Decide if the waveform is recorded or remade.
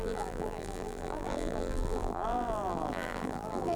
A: remade